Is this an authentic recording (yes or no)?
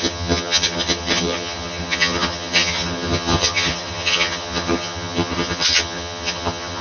no